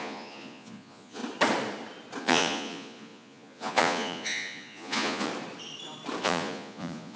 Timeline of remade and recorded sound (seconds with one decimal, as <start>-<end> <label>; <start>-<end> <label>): 0.0-1.2 remade; 1.2-2.2 recorded; 2.2-5.3 remade; 5.3-6.2 recorded; 6.2-7.2 remade